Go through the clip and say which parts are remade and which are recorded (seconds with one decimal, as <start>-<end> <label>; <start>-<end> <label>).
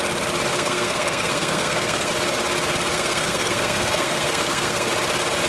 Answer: 0.0-0.5 recorded; 0.5-2.1 remade; 2.1-2.9 recorded; 2.9-4.9 remade; 4.9-5.5 recorded